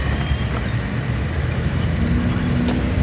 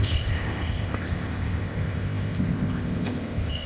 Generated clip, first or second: second